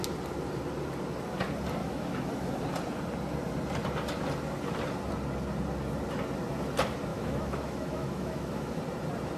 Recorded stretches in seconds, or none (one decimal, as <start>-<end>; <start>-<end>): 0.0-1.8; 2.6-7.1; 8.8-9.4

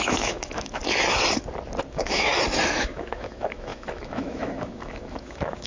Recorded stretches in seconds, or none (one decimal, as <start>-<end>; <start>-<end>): 0.8-1.9; 2.3-2.8

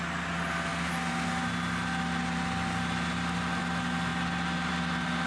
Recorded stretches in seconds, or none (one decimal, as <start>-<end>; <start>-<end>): 0.0-5.3